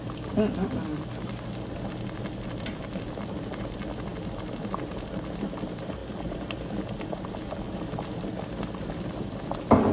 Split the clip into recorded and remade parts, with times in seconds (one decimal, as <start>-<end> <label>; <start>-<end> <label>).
0.0-9.9 recorded